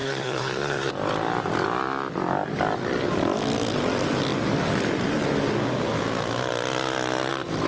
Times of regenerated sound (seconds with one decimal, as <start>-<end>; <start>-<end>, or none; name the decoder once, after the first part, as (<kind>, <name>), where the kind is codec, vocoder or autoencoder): 0.0-0.9 (codec, SNAC)